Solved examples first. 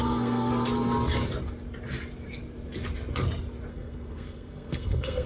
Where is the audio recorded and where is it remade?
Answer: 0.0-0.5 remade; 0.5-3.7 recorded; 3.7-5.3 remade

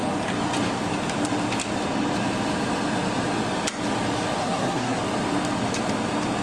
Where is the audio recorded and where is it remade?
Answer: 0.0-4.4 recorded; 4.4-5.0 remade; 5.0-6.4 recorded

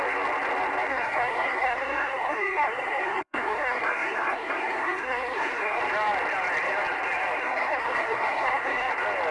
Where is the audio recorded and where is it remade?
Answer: 0.0-0.9 recorded; 0.9-5.8 remade; 5.8-7.4 recorded; 7.4-8.9 remade; 8.9-9.3 recorded

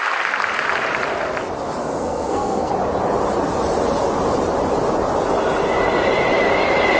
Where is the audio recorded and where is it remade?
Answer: 0.0-1.8 recorded; 1.8-2.7 remade; 2.7-7.0 recorded